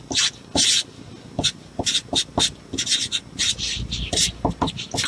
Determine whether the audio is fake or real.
real